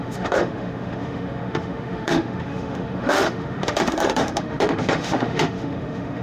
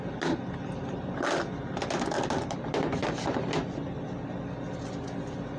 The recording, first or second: second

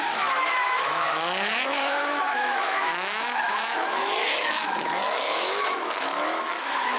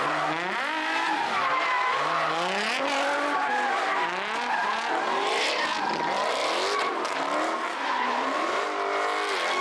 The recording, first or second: second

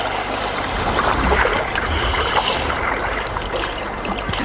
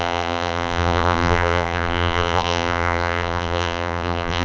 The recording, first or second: first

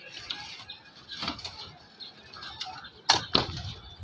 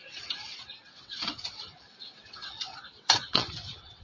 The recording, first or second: first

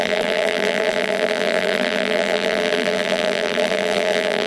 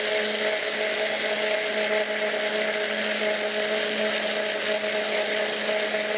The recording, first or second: second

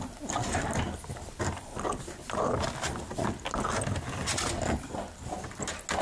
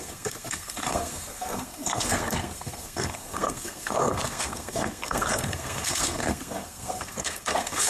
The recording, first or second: first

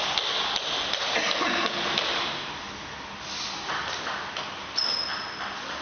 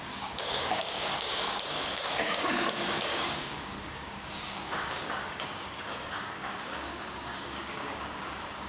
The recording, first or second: first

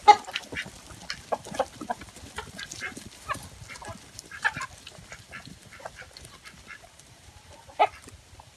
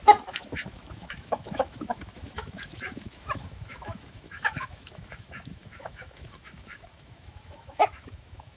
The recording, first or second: first